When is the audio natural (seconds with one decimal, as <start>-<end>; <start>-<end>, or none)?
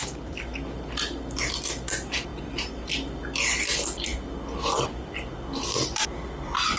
0.0-6.8